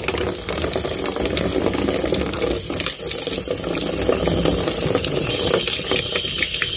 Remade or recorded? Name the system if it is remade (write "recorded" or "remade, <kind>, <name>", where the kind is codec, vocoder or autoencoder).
recorded